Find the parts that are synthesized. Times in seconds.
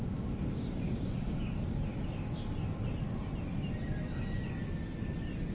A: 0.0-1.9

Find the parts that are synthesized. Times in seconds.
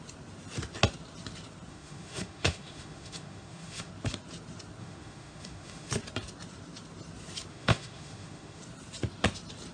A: 1.7-3.9; 4.8-5.9; 7.5-8.6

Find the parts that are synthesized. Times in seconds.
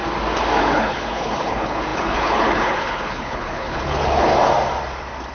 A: 0.6-4.3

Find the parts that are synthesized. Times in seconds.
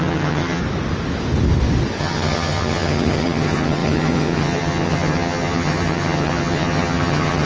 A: 0.0-0.6; 2.0-7.5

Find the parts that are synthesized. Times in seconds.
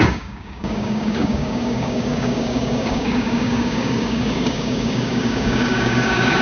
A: 0.0-6.4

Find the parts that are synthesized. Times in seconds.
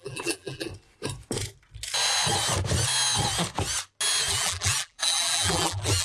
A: 0.0-0.7; 4.3-6.0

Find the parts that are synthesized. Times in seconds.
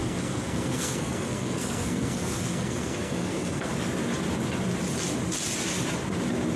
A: 0.0-3.7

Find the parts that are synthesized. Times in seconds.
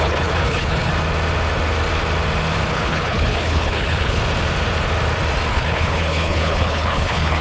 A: 0.0-0.9; 2.7-4.2; 5.5-7.4